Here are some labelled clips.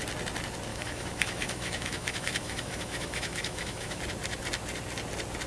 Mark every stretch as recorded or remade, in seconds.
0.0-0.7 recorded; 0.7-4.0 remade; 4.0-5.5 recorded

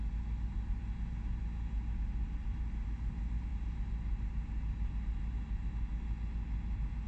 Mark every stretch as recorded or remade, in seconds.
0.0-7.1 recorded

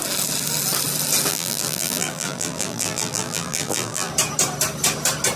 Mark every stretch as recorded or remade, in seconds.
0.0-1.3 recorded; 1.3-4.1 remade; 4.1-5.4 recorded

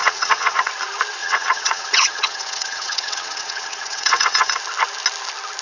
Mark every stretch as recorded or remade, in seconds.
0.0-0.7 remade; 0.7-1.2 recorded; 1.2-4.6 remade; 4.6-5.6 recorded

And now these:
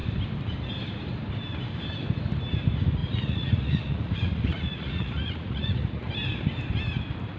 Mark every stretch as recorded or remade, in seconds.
0.0-3.0 recorded; 3.0-6.1 remade; 6.1-7.4 recorded